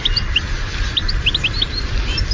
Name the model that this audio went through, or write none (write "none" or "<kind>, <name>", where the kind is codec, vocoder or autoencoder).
vocoder, BigVGAN v2